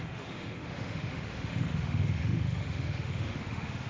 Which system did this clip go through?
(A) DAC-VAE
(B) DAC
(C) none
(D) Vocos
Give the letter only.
A